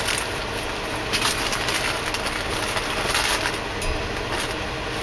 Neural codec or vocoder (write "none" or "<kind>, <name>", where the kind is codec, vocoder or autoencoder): none